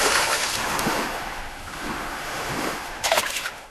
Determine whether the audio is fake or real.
fake